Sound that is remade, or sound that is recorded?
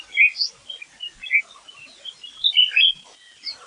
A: recorded